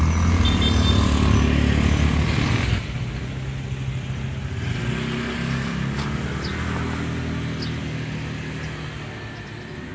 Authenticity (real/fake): real